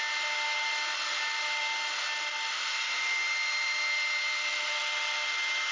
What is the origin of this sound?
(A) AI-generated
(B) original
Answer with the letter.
B